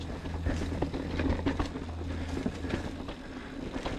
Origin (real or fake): real